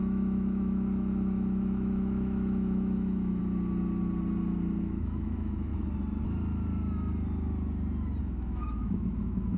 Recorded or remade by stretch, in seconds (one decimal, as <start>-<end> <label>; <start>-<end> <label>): 0.0-3.4 remade; 3.4-4.8 recorded; 4.8-5.7 remade; 5.7-8.2 recorded; 8.2-9.6 remade